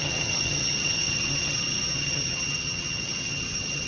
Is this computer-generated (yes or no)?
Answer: yes